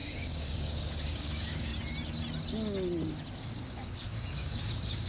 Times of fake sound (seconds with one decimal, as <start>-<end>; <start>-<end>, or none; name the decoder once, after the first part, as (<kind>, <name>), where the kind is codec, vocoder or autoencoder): 0.0-1.7 (codec, DAC); 3.4-5.1